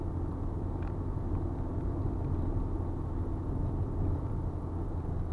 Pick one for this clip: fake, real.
real